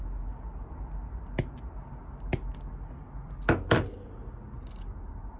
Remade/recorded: recorded